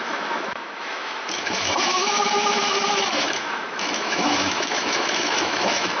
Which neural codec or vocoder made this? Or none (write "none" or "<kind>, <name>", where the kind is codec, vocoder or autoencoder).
autoencoder, DAC-VAE